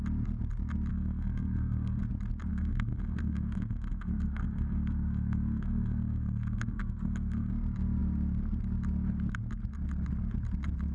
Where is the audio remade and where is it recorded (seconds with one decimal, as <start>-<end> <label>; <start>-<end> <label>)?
0.0-0.9 recorded; 0.9-2.0 remade; 2.0-2.5 recorded; 2.5-7.5 remade; 7.5-10.9 recorded